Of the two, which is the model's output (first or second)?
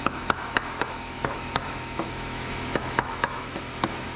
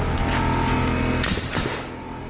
first